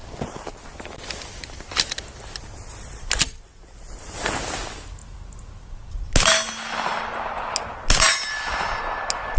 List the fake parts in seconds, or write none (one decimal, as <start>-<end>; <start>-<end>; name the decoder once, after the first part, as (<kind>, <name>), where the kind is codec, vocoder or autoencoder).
none